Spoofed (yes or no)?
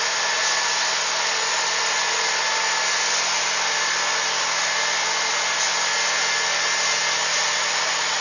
no